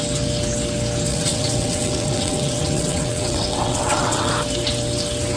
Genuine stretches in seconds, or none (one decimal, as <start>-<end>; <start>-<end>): 0.0-1.1; 4.3-5.4

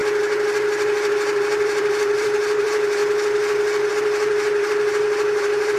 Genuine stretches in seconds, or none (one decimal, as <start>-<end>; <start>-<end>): 0.0-1.1; 3.0-3.9

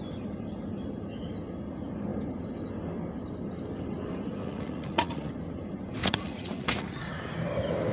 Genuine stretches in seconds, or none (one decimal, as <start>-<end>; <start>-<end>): 0.0-4.4; 5.3-6.0; 7.2-7.9